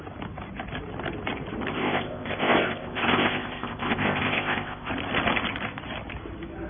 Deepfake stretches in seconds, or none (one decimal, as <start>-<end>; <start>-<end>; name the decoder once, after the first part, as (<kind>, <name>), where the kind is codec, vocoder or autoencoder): 1.7-4.9 (codec, ZipCodec)